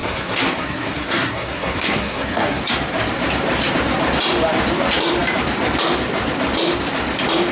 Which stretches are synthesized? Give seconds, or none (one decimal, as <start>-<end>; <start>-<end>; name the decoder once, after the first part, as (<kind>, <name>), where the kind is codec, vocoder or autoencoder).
0.0-2.6 (codec, SNAC)